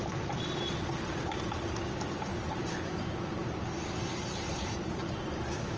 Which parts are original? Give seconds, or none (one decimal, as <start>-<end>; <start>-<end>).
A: 0.0-3.4; 4.9-5.8